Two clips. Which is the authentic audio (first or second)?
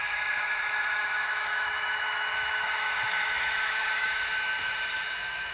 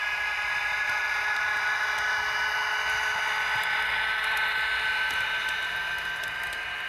second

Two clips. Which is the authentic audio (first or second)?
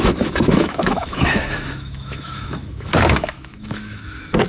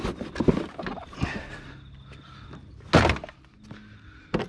second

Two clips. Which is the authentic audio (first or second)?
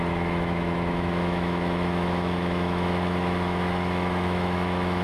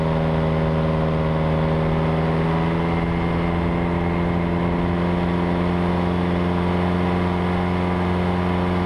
second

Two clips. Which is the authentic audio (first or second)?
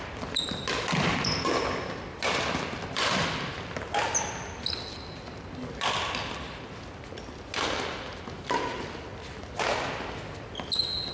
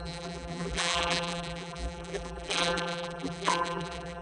first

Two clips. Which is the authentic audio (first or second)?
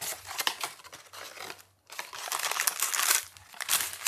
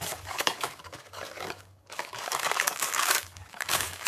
first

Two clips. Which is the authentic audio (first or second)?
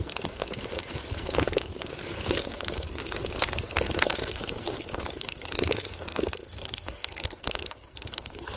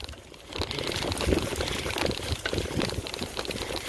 second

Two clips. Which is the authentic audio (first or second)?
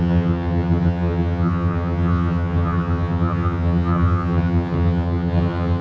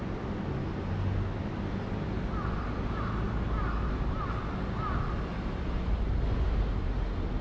second